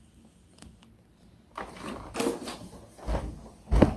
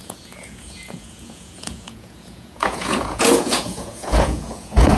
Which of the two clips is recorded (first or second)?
first